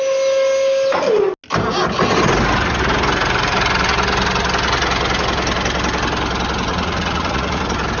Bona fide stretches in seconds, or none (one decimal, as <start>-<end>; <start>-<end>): 0.0-6.7; 7.6-8.0